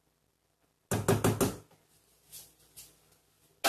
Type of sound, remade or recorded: recorded